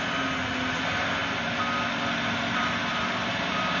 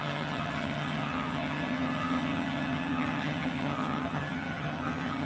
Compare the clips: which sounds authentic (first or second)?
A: first